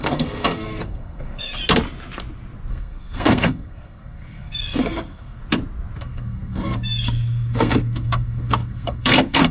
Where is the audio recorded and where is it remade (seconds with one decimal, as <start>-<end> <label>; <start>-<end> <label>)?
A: 0.0-1.6 remade; 1.6-2.7 recorded; 2.7-5.4 remade; 5.4-6.0 recorded; 6.0-9.5 remade